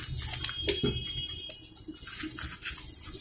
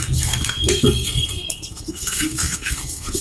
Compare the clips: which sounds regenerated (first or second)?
second